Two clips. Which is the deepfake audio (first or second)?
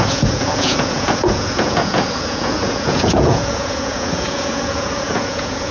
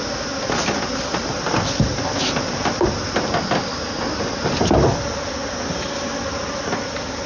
first